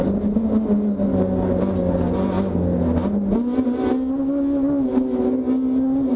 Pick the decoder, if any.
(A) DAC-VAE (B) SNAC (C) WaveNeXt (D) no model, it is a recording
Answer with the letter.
D